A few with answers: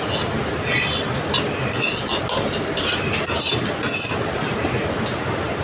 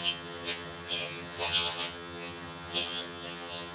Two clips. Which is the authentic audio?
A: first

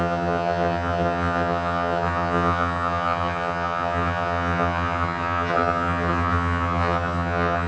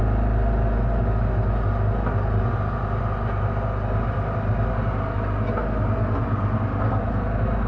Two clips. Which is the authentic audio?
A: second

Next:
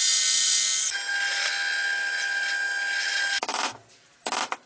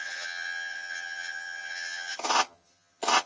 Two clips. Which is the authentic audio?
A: first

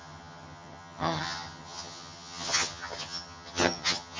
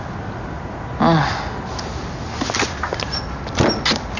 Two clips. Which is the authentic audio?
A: second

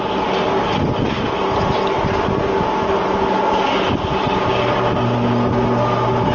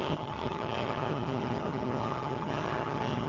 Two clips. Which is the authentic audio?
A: first